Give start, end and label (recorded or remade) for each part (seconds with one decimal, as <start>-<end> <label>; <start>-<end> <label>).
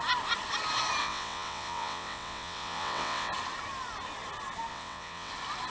0.0-1.0 recorded; 1.0-3.3 remade; 3.3-4.7 recorded; 4.7-5.3 remade; 5.3-5.7 recorded